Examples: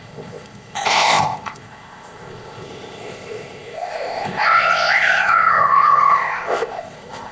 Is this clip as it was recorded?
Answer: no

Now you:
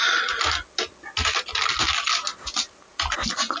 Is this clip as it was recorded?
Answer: yes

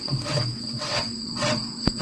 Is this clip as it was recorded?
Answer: no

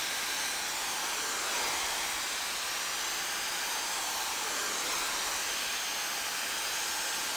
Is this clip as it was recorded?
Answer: yes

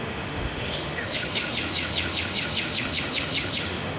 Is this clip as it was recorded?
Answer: no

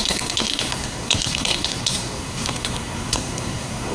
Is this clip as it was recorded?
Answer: no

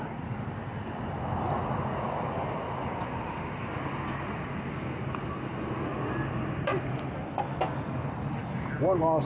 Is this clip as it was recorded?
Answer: yes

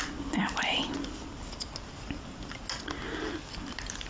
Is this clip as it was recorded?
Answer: yes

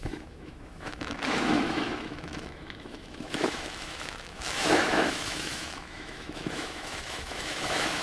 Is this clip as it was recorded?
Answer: no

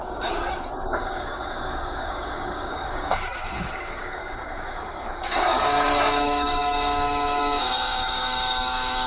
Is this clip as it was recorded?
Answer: no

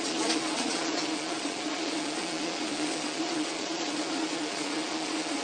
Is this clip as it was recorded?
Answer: no